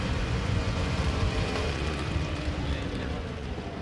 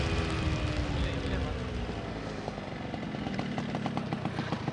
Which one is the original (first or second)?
second